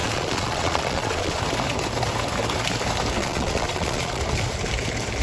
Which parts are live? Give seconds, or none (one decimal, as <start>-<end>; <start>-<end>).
1.4-3.2; 4.2-5.2